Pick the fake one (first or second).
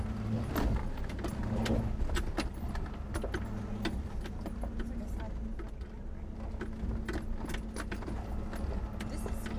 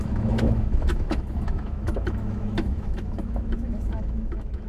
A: second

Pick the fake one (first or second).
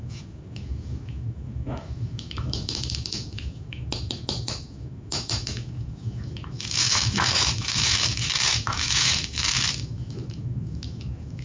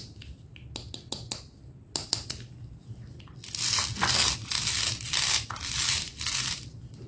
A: first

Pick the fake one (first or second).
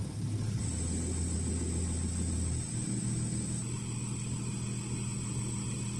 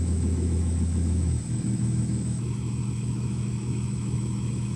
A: second